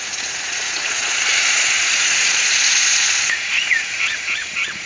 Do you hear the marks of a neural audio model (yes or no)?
yes